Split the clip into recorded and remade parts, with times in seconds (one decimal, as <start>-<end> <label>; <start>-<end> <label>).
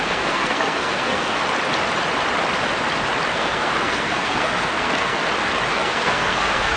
0.0-1.4 remade; 1.4-3.3 recorded; 3.3-5.2 remade; 5.2-5.7 recorded; 5.7-6.8 remade